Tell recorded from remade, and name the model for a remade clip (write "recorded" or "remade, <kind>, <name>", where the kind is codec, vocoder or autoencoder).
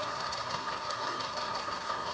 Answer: remade, codec, SNAC